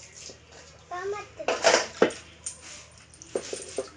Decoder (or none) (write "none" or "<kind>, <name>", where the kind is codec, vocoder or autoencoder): none